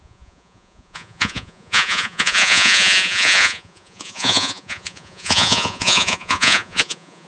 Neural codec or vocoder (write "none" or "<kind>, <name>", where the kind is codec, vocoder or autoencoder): vocoder, Vocos